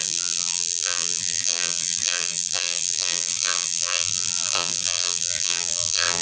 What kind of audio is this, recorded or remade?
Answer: remade